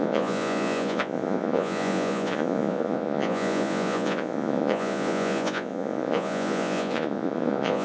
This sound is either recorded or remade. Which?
remade